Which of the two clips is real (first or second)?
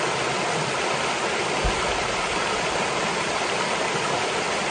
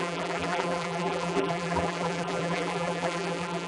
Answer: first